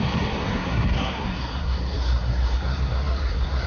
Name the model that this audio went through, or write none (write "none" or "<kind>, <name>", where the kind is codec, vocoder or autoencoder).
codec, SNAC